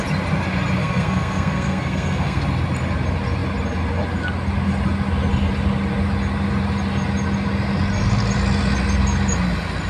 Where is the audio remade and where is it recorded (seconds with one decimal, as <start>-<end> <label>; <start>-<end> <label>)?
0.0-0.8 recorded; 0.8-2.4 remade; 2.4-9.9 recorded